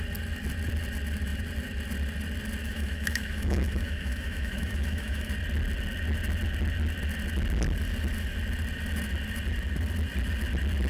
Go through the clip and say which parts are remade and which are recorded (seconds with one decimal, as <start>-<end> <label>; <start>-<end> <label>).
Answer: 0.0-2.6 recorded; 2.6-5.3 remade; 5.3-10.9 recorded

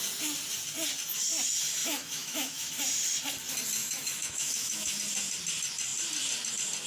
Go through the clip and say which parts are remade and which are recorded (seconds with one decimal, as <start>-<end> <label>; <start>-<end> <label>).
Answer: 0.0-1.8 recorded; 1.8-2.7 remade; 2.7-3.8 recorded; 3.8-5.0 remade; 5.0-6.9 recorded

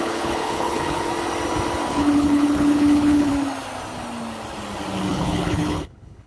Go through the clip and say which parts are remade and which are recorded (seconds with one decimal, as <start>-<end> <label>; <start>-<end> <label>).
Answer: 0.0-1.1 remade; 1.1-1.9 recorded; 1.9-3.3 remade; 3.3-5.1 recorded; 5.1-6.3 remade